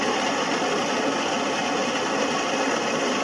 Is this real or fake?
real